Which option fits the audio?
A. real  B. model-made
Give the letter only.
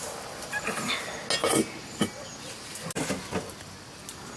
A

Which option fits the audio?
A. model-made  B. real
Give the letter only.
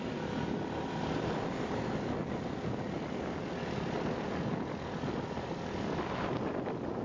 B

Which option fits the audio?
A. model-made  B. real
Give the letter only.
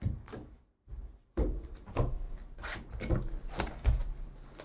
B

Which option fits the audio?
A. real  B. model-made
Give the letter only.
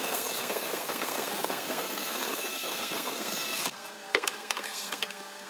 B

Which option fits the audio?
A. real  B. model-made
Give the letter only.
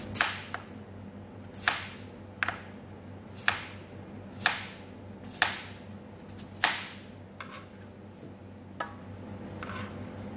A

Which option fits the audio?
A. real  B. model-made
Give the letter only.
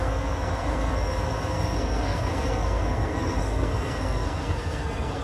B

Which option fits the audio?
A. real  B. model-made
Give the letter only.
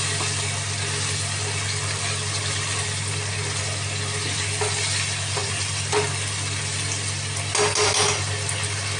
A